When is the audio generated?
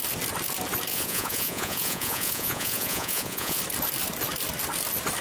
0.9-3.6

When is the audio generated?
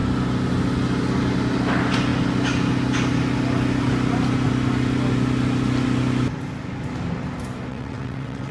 7.7-8.5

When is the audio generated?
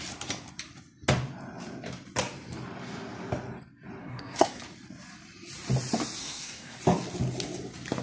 4.0-4.6; 6.2-6.8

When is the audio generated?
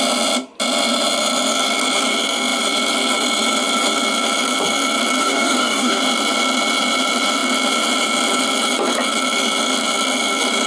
5.2-6.0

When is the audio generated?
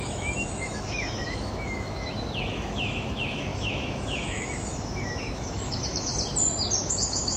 0.0-6.1; 6.8-7.4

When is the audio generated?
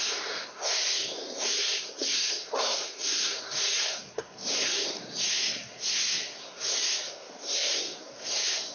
0.0-8.7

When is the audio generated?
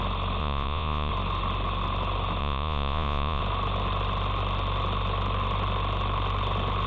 0.4-1.1; 2.4-3.4